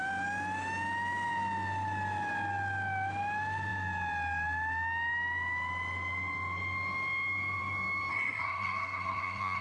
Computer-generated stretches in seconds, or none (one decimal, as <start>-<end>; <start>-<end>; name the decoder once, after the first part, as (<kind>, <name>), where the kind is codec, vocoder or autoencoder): 8.1-9.6 (codec, SNAC)